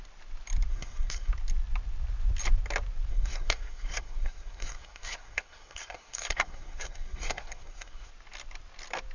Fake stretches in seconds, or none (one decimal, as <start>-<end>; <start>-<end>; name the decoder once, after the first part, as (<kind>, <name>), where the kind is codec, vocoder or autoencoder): 0.7-1.3 (codec, SNAC); 3.1-8.1